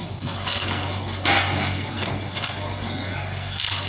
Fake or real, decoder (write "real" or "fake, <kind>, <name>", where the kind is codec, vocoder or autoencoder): fake, codec, SNAC